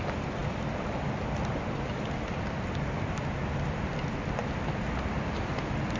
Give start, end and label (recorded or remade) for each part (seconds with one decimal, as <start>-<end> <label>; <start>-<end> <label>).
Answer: 0.0-6.0 recorded

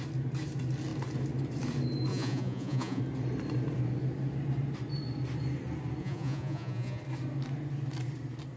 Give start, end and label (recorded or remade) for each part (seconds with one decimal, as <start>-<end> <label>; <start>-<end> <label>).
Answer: 0.0-2.1 recorded; 2.1-3.0 remade; 3.0-6.0 recorded; 6.0-7.0 remade; 7.0-8.6 recorded

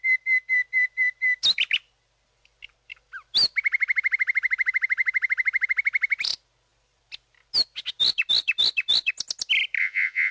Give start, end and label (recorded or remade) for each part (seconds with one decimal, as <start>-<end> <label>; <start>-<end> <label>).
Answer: 0.0-9.8 recorded; 9.8-10.3 remade

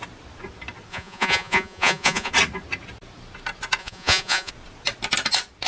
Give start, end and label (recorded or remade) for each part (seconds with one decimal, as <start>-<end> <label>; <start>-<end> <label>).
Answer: 0.0-0.9 recorded; 0.9-2.3 remade; 2.3-3.8 recorded; 3.8-4.5 remade; 4.5-5.7 recorded

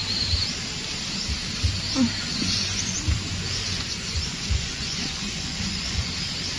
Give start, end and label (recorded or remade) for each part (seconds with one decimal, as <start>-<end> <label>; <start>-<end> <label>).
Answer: 0.0-2.2 recorded; 2.2-6.1 remade; 6.1-6.6 recorded